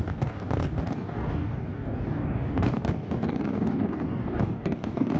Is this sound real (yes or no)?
no